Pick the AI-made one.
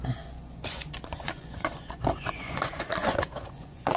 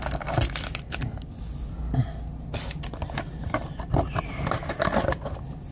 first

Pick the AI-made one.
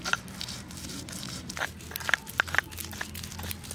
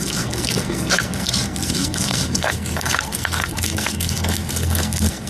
second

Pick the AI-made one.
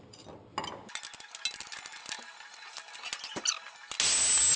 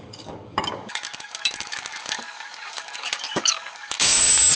second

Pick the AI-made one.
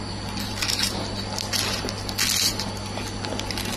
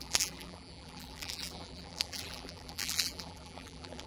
second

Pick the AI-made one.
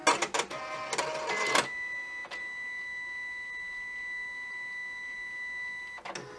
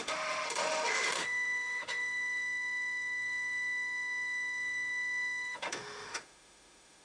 second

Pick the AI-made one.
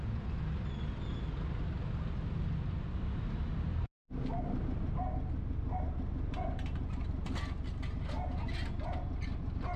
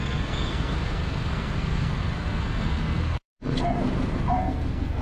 second